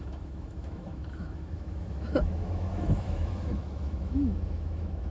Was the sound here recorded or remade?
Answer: remade